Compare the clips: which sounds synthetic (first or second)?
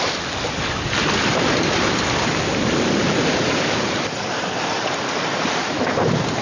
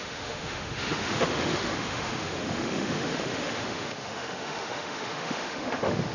second